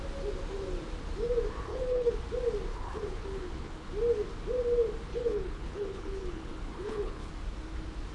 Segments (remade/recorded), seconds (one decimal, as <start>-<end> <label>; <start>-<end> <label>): 0.0-1.7 recorded; 1.7-2.2 remade; 2.2-2.7 recorded; 2.7-3.9 remade; 3.9-5.1 recorded; 5.1-7.3 remade; 7.3-8.1 recorded

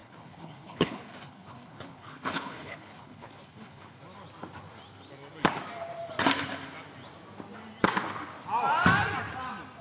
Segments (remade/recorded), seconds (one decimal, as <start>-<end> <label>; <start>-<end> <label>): 0.0-4.0 remade; 4.0-9.8 recorded

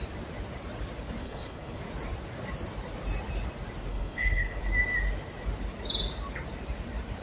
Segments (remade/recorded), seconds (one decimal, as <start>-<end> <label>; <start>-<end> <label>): 0.0-1.2 recorded; 1.2-1.8 remade; 1.8-3.9 recorded; 3.9-4.6 remade; 4.6-7.2 recorded

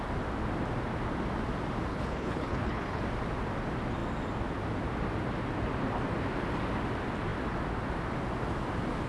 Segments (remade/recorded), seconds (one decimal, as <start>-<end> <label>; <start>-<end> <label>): 0.0-1.9 recorded; 1.9-3.0 remade; 3.0-9.1 recorded

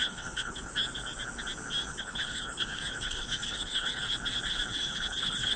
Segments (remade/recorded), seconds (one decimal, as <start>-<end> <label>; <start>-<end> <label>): 0.0-0.7 remade; 0.7-1.9 recorded; 1.9-4.0 remade; 4.0-4.7 recorded; 4.7-5.6 remade